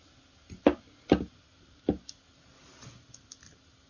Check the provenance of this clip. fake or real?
real